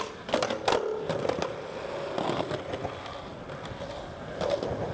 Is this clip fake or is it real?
real